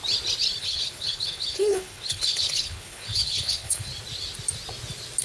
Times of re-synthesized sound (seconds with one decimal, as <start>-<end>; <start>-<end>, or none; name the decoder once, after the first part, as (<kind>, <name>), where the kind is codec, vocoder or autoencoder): 0.6-3.9 (codec, HILCodec)